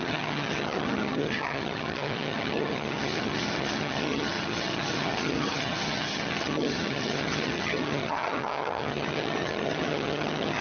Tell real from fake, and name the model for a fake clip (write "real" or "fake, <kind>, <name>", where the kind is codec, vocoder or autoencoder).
fake, vocoder, HiFi-GAN